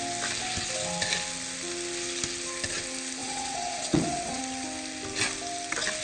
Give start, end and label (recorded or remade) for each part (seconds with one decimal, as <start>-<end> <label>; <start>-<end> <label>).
0.0-3.2 recorded; 3.2-4.4 remade; 4.4-6.0 recorded